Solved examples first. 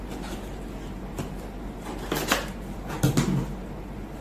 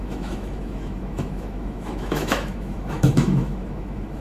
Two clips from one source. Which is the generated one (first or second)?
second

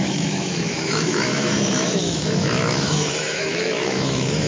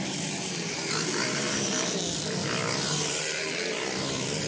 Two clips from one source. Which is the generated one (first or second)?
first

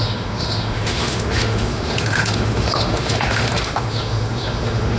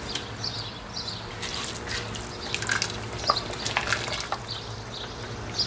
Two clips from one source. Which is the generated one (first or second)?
first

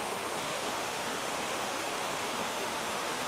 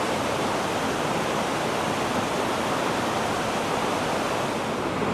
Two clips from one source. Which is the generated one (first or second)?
first